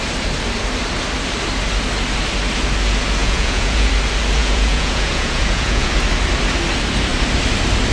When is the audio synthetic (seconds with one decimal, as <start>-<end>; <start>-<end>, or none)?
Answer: 3.2-3.9; 4.4-5.9